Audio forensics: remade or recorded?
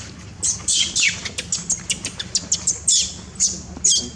recorded